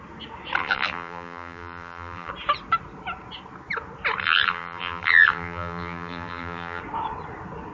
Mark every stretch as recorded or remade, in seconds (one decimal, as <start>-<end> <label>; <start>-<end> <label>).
0.0-0.6 recorded; 0.6-2.3 remade; 2.3-4.2 recorded; 4.2-6.8 remade; 6.8-7.7 recorded